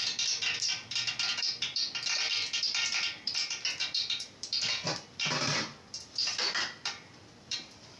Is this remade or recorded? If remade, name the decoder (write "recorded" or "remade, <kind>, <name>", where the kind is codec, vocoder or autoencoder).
remade, vocoder, BigVGAN v2